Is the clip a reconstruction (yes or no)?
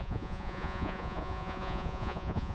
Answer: yes